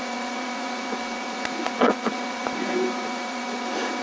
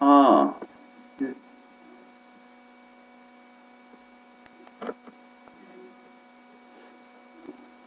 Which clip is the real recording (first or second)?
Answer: second